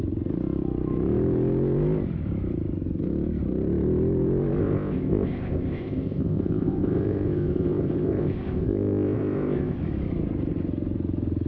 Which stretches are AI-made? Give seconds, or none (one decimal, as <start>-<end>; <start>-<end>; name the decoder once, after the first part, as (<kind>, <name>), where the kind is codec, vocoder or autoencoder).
4.6-9.8 (codec, ZipCodec)